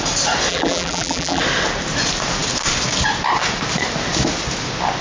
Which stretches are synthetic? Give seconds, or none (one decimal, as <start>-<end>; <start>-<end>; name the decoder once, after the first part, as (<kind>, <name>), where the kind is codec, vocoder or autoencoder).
0.5-1.4 (vocoder, BigVGAN v2)